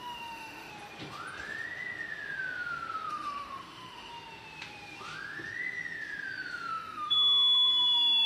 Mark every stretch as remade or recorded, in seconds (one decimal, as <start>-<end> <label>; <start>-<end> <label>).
0.0-0.7 remade; 0.7-3.1 recorded; 3.1-4.1 remade; 4.1-6.7 recorded; 6.7-7.7 remade; 7.7-8.3 recorded